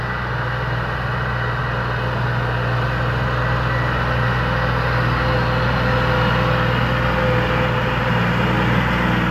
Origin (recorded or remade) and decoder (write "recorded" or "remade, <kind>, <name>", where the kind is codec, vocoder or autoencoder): recorded